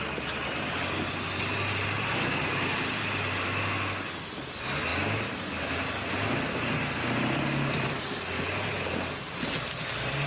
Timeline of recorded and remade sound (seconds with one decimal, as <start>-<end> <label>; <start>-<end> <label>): 0.0-10.3 recorded